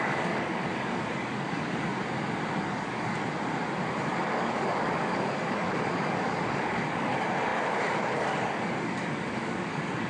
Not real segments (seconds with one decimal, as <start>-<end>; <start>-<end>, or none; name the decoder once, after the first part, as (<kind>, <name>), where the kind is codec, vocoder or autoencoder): 0.0-1.9 (codec, DAC); 2.6-3.2; 4.2-10.1